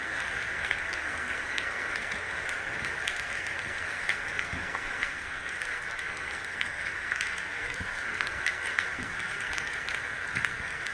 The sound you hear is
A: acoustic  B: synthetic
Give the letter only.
B